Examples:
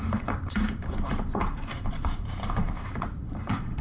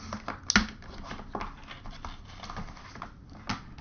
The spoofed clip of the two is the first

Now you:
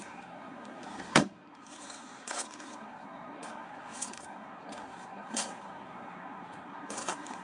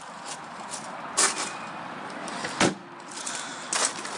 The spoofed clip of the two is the first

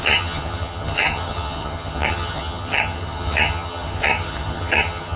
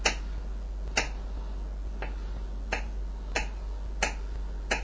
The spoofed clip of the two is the first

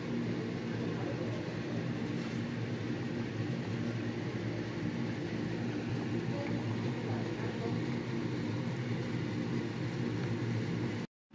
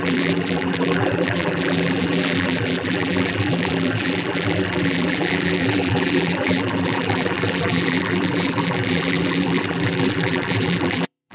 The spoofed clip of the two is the second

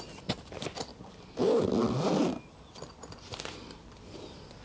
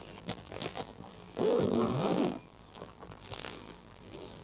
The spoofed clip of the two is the second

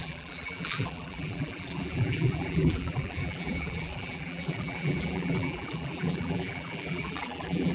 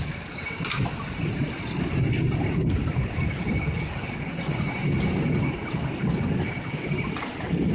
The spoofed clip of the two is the first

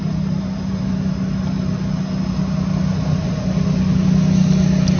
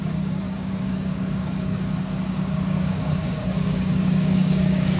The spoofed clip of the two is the second